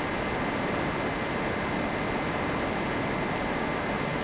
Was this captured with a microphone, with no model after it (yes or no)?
yes